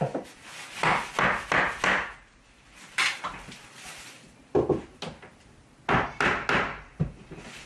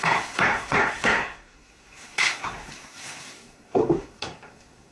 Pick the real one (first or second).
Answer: first